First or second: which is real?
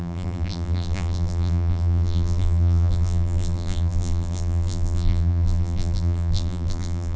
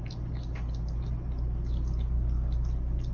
second